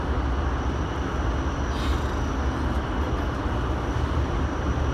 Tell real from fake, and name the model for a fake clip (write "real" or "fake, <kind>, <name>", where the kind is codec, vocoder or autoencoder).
real